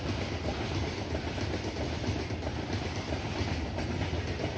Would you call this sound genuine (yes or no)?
yes